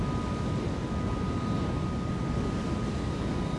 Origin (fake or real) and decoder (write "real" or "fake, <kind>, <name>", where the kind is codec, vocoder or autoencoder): real